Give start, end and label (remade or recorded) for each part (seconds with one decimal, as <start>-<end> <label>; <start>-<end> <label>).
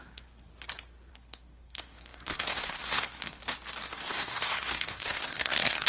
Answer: 0.0-0.5 remade; 0.5-1.1 recorded; 1.1-3.4 remade; 3.4-3.9 recorded; 3.9-5.9 remade